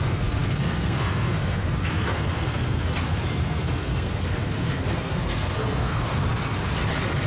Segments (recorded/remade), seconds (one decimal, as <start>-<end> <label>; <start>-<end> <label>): 0.0-6.2 remade; 6.2-7.3 recorded